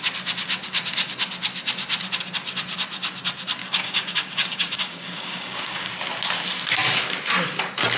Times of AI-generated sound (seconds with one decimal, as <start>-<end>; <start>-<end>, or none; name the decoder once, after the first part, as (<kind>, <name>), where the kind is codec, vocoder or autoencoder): 3.6-5.9 (codec, DAC)